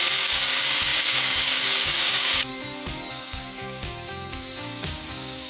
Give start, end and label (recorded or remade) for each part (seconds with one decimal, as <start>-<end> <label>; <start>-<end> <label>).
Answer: 0.0-2.5 remade; 2.5-3.1 recorded; 3.1-5.5 remade